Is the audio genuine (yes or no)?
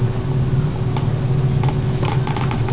yes